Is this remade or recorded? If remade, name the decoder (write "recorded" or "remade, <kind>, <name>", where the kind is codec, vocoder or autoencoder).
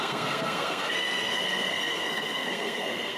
remade, codec, SNAC